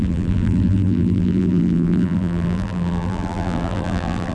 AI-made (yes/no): yes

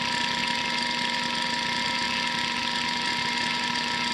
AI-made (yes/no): no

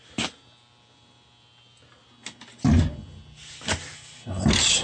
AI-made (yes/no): no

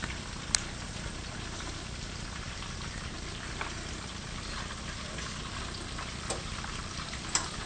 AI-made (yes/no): yes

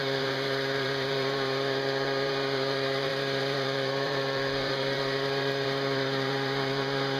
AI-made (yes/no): yes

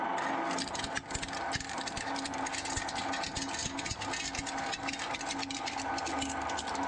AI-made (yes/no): no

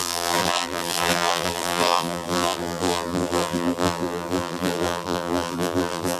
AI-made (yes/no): yes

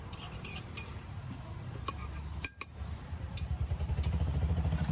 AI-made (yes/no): yes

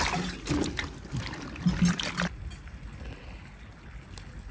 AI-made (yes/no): no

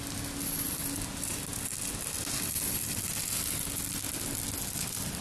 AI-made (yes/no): no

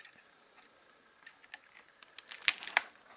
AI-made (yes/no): no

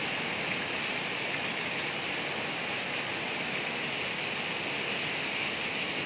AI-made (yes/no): no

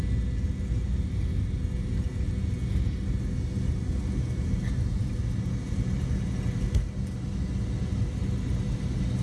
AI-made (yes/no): no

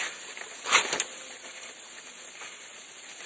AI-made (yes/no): no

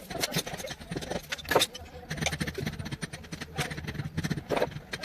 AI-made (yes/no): no